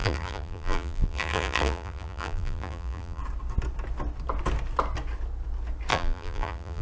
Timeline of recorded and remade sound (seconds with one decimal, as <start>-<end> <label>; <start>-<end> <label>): 0.0-3.2 remade; 3.2-5.9 recorded; 5.9-6.8 remade